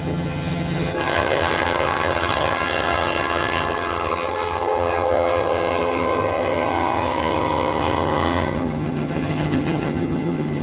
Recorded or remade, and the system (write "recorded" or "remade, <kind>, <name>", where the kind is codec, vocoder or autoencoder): remade, vocoder, HiFi-GAN